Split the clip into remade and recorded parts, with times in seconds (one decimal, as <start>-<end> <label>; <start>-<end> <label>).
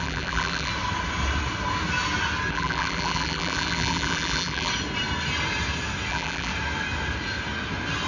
0.0-0.7 remade; 0.7-2.5 recorded; 2.5-4.7 remade; 4.7-6.1 recorded; 6.1-6.5 remade; 6.5-8.1 recorded